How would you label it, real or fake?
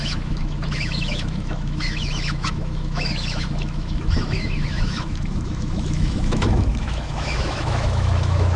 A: fake